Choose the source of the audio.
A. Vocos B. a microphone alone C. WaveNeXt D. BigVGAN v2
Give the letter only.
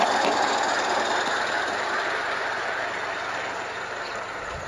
B